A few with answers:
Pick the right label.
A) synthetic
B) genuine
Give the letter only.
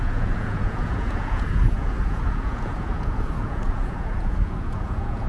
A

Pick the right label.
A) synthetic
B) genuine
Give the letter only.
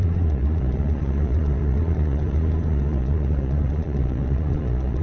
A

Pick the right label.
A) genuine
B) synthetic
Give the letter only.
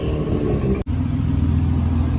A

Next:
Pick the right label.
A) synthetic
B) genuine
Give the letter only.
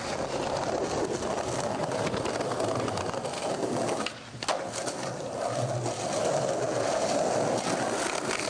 B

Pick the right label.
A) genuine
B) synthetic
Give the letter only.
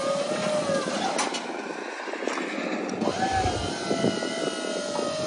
A